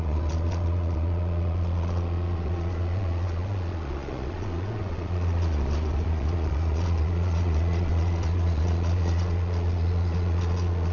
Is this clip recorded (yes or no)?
no